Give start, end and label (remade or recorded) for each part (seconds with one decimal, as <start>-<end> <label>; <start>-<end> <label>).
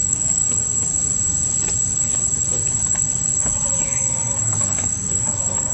0.0-0.4 remade; 0.4-3.8 recorded; 3.8-5.7 remade